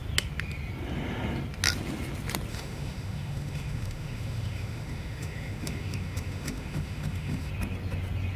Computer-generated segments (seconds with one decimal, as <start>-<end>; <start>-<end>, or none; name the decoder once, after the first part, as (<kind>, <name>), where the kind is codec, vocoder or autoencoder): 2.5-7.5 (autoencoder, DAC-VAE)